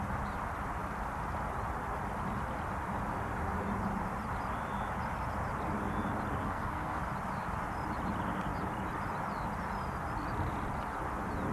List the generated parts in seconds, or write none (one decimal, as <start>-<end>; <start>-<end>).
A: 6.4-7.0